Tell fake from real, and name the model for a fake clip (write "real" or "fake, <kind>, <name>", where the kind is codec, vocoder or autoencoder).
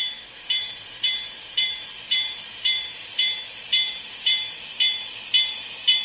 fake, vocoder, BigVGAN v2